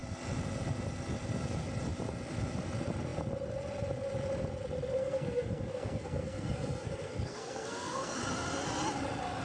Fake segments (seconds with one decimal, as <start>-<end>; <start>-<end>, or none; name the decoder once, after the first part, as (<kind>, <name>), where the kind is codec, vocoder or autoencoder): 5.0-8.2 (codec, SNAC)